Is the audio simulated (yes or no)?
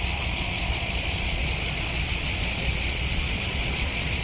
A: yes